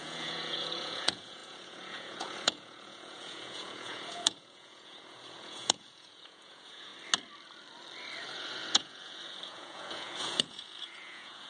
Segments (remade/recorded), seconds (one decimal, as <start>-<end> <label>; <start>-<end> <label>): 0.0-6.9 remade; 6.9-8.2 recorded; 8.2-11.5 remade